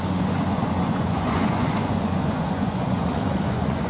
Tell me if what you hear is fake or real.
fake